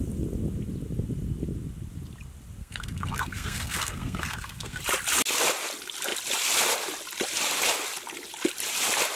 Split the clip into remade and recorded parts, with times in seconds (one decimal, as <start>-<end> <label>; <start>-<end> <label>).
0.0-2.6 recorded; 2.6-4.8 remade; 4.8-9.2 recorded